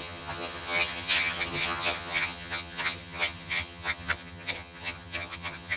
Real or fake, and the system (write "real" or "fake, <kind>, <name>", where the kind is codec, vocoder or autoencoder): fake, vocoder, HiFi-GAN